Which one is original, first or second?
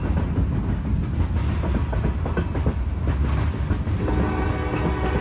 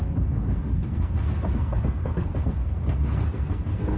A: first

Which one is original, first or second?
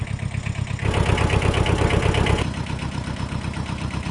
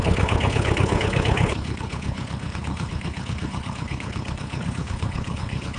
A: first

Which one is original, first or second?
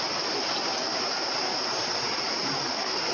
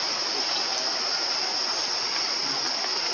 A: second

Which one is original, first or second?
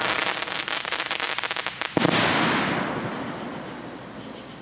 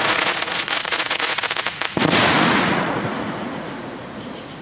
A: first